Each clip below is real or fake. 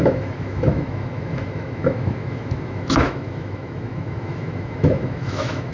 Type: fake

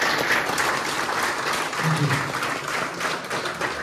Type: real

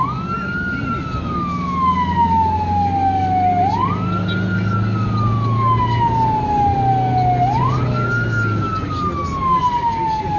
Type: real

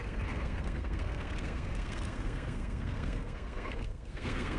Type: fake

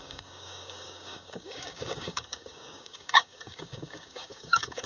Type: fake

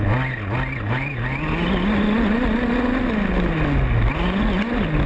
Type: real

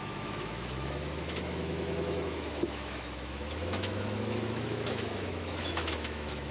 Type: fake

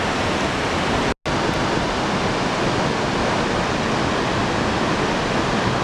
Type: real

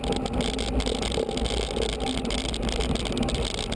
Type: real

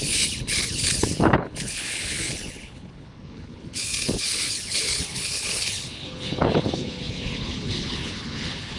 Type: fake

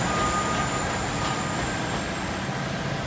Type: real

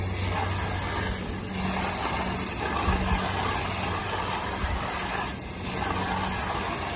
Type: real